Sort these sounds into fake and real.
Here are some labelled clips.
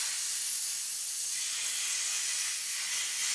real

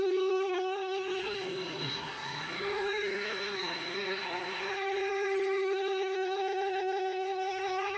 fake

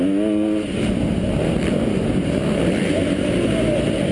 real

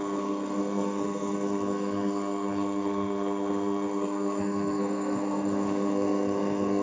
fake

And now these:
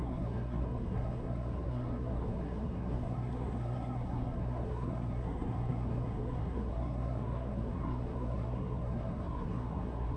fake